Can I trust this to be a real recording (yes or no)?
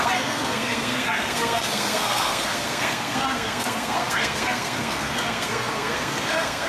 no